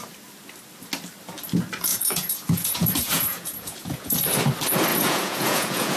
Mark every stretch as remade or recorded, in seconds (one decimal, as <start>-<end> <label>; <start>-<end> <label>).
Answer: 0.0-1.9 recorded; 1.9-4.2 remade; 4.2-4.9 recorded; 4.9-6.0 remade